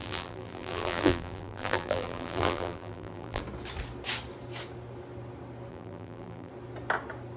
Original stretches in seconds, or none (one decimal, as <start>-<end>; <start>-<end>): 3.4-5.7; 6.5-7.4